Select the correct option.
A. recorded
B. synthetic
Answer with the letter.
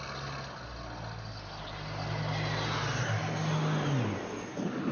A